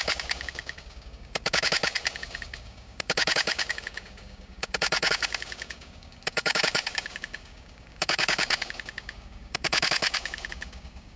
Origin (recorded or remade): remade